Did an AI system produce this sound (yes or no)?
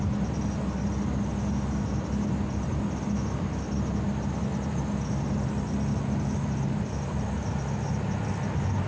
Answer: no